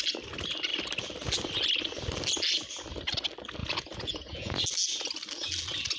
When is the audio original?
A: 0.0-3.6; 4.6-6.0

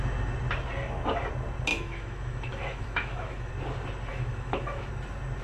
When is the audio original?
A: 0.0-1.7; 3.5-4.1; 4.9-5.4

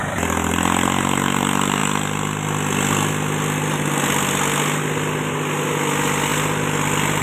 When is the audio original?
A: 0.0-7.2

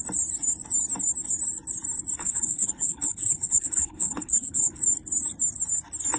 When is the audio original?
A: 0.0-2.2; 4.8-6.2

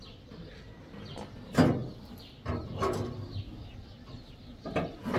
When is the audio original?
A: 0.0-5.2

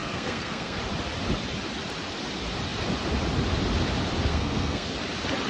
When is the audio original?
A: 0.8-4.3; 4.9-5.5

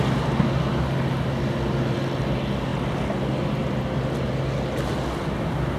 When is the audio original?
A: 0.0-5.8

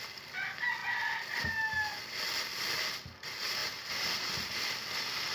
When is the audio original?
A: 0.0-5.3